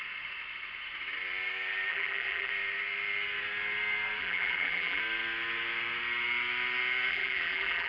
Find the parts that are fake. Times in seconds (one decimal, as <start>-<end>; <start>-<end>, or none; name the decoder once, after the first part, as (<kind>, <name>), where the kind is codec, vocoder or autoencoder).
1.9-2.5 (vocoder, BigVGAN v2); 4.2-5.0; 7.1-7.9